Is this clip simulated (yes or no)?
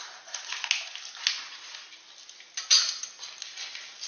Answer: no